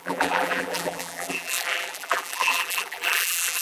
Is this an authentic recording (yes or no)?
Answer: no